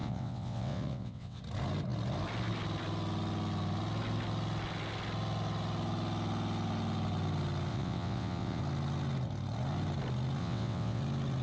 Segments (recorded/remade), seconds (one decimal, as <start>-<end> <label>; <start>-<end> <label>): 0.0-1.4 remade; 1.4-7.7 recorded; 7.7-8.6 remade; 8.6-10.4 recorded; 10.4-11.0 remade; 11.0-11.4 recorded